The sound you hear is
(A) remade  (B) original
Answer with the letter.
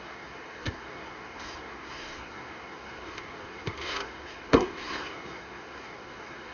A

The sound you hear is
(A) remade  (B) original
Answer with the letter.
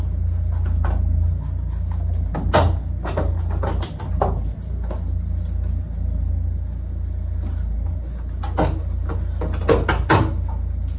B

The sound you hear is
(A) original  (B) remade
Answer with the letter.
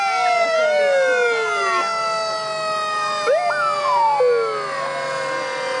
A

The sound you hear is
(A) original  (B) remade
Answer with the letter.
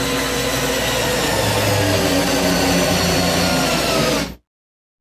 A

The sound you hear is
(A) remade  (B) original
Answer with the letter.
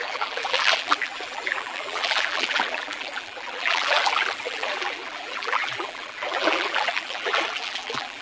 A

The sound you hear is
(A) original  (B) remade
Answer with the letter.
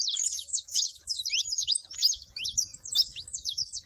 B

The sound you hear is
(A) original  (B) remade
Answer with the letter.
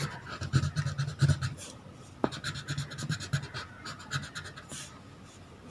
A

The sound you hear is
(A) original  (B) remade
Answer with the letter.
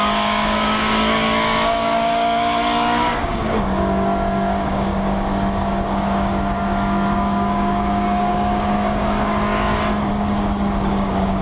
B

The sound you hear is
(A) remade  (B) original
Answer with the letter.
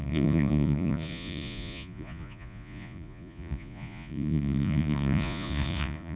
A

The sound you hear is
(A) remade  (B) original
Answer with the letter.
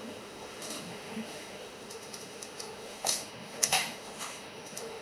A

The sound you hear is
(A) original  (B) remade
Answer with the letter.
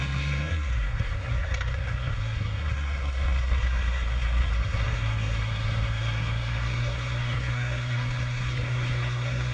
B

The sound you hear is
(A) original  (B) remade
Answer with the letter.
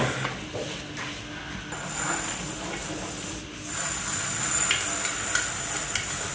A